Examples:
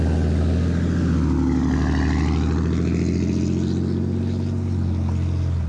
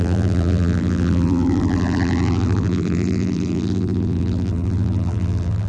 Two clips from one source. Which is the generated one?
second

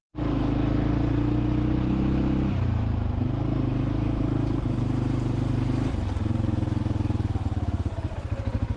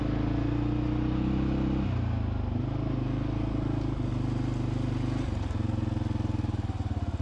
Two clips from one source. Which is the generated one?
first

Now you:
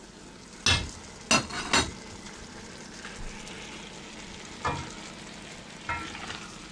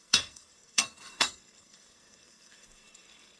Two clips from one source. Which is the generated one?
second